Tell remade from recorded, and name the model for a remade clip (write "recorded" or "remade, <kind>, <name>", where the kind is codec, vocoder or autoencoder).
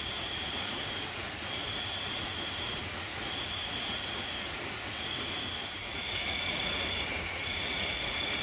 remade, vocoder, Vocos